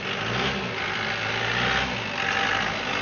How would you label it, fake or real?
real